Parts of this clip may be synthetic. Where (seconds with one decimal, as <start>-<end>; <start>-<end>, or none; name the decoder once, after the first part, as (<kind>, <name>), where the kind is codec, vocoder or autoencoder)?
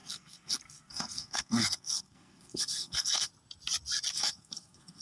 0.0-3.3 (codec, SNAC); 4.1-5.0